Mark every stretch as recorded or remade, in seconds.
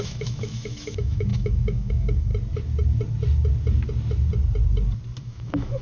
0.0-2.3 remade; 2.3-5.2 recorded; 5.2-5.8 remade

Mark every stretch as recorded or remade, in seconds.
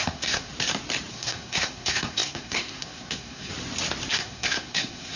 0.0-0.5 remade; 0.5-1.1 recorded; 1.1-3.5 remade; 3.5-4.1 recorded; 4.1-5.2 remade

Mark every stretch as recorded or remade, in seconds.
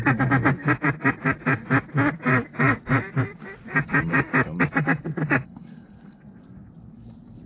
0.0-1.0 recorded; 1.0-2.0 remade; 2.0-5.0 recorded; 5.0-7.5 remade